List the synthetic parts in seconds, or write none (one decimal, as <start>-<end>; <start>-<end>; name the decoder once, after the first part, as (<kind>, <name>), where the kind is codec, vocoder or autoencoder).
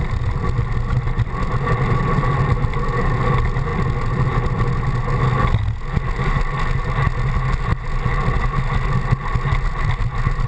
none